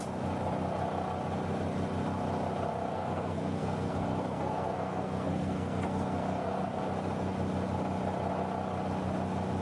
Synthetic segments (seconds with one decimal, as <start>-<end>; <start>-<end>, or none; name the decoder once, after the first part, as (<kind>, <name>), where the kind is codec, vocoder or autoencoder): 2.9-6.8 (codec, SNAC)